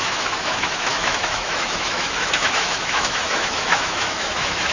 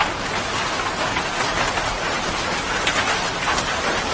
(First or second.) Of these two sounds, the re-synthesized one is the first